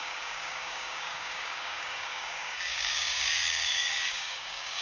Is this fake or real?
fake